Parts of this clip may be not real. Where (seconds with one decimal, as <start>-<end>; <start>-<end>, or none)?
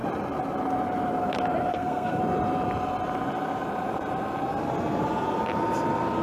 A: 1.7-2.2